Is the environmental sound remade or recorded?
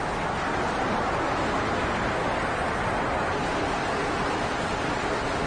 recorded